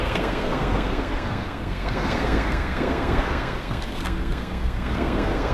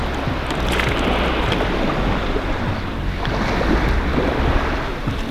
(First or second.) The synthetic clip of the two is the first